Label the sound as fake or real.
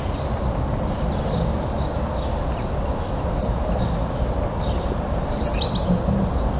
real